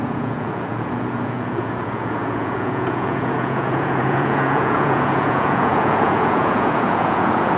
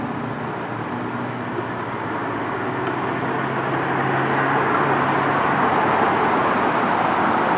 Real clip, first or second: second